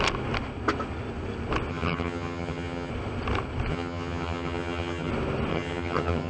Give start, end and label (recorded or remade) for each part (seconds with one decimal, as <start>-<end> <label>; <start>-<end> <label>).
0.0-1.7 recorded; 1.7-2.9 remade; 2.9-3.7 recorded; 3.7-5.1 remade; 5.1-5.5 recorded; 5.5-6.3 remade